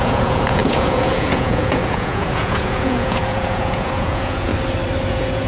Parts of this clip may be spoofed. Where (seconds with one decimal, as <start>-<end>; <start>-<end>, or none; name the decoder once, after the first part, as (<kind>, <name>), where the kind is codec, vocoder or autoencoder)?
0.0-4.5 (vocoder, Vocos); 5.1-5.5

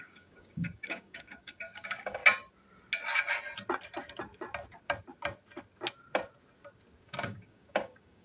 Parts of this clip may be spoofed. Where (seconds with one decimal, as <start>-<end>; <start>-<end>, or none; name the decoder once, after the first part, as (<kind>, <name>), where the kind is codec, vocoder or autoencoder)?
0.0-2.2 (codec, DAC); 7.0-8.2

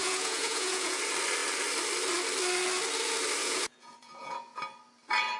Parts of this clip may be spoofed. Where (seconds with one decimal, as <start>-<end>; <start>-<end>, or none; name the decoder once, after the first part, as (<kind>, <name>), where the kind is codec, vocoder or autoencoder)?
0.0-1.0 (vocoder, Vocos); 3.4-4.6

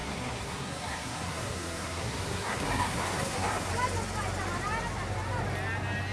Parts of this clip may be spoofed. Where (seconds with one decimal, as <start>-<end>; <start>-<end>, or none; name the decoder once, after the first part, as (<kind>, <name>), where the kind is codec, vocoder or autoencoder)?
0.0-3.7 (codec, SNAC)

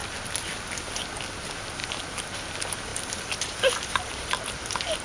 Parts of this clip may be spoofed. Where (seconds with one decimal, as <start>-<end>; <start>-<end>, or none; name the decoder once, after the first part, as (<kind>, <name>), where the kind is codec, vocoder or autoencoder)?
none

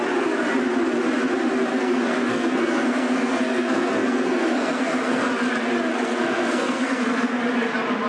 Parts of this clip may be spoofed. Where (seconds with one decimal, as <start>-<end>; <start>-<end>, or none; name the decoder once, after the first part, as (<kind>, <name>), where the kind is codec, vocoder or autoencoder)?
1.7-5.3 (codec, SNAC); 5.9-7.4

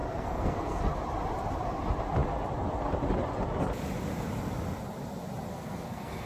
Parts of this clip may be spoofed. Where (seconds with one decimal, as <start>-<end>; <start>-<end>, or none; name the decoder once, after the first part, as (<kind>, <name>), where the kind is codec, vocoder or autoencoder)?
0.0-0.8 (codec, SNAC); 5.5-6.3

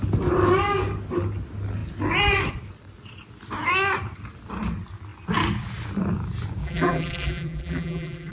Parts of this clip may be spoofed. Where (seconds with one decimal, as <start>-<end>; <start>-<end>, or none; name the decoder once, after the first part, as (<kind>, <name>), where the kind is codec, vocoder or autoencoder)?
6.6-8.3 (vocoder, BigVGAN v2)